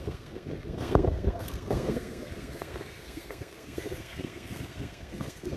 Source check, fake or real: fake